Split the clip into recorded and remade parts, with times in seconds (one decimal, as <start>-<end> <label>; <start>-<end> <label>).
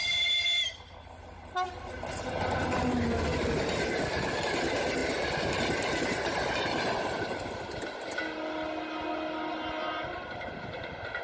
0.0-11.2 recorded